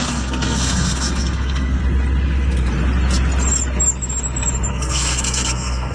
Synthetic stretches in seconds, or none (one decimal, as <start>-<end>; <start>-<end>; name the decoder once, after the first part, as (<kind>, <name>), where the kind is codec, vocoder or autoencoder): 0.0-1.8 (codec, SNAC); 4.7-5.9